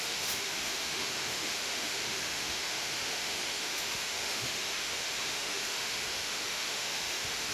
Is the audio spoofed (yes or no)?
yes